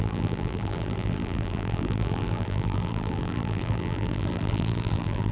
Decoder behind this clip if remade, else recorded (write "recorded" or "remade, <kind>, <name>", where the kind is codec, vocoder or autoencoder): remade, vocoder, BigVGAN v2